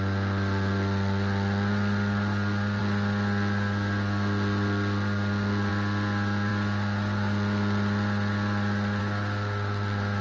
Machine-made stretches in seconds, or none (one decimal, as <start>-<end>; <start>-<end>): none